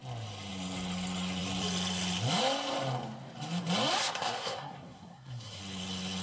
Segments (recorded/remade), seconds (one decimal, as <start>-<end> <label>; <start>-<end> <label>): 0.0-4.0 recorded; 4.0-5.6 remade; 5.6-6.2 recorded